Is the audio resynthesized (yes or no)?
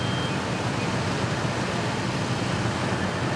no